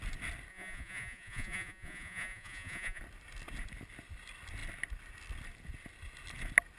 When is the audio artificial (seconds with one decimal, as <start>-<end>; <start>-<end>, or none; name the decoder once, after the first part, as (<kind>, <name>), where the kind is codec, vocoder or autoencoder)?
0.5-3.0 (vocoder, Vocos)